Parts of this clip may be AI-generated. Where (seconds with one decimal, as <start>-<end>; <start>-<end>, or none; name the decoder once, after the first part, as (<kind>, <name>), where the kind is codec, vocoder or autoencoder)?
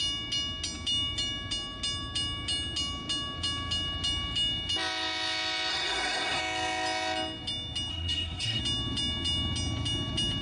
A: 5.7-6.4 (codec, SNAC); 7.9-8.6